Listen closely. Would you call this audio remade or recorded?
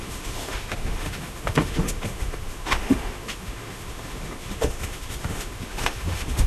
remade